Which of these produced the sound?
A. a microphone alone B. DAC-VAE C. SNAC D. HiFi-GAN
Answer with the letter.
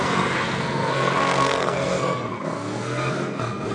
C